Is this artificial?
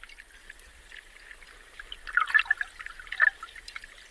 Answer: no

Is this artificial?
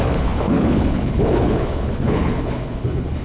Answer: yes